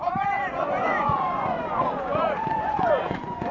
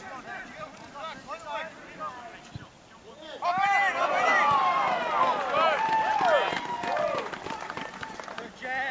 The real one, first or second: second